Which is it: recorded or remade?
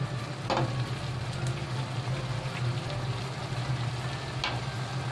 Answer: recorded